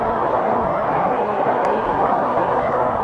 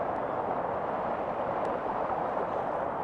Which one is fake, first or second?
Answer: first